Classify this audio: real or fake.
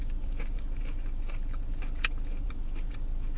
fake